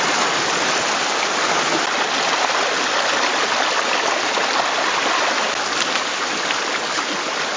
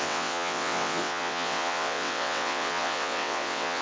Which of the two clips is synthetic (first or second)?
second